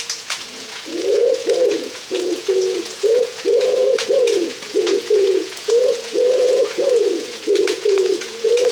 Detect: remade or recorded remade